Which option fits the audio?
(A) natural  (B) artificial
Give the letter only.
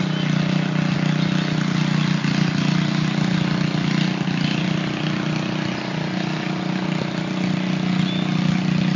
A